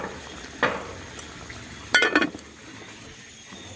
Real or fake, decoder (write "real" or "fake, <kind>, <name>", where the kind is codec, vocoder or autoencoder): fake, vocoder, BigVGAN v2